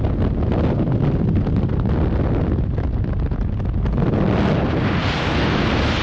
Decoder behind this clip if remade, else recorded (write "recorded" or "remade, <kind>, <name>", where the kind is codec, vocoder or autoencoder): recorded